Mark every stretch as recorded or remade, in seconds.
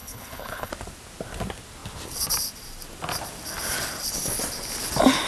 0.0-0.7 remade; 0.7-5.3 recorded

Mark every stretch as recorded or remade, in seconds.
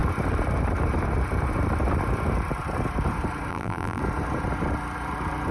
0.0-3.5 recorded; 3.5-4.0 remade; 4.0-5.5 recorded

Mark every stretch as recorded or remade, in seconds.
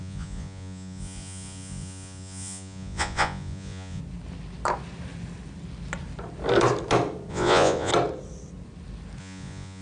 0.0-4.0 remade; 4.0-7.3 recorded; 7.3-7.9 remade; 7.9-9.2 recorded; 9.2-9.8 remade